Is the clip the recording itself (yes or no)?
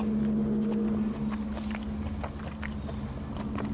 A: yes